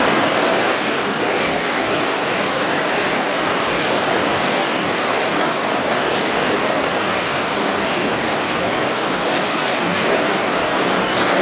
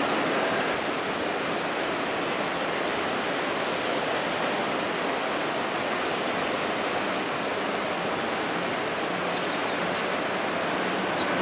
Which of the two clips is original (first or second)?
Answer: second